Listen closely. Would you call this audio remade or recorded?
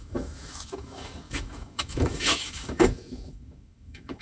remade